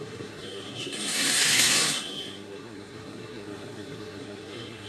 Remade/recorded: remade